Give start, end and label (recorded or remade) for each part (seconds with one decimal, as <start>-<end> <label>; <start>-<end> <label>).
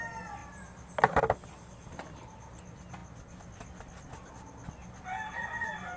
0.0-0.4 recorded; 0.4-1.2 remade; 1.2-6.0 recorded